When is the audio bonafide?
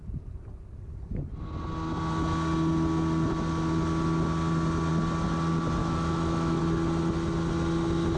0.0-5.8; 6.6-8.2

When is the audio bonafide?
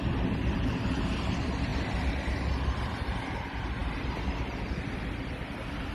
0.0-5.9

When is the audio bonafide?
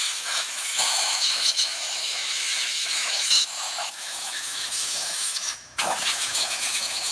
none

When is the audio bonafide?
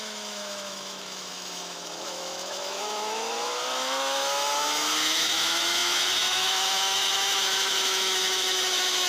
none